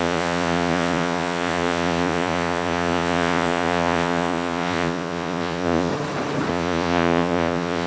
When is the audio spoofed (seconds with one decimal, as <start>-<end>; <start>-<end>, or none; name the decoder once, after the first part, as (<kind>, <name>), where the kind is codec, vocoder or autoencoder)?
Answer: 0.0-5.9 (vocoder, Vocos); 6.5-7.9